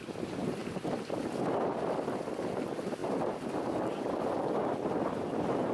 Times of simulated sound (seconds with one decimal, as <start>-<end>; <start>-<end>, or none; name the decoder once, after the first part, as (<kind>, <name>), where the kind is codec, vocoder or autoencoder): none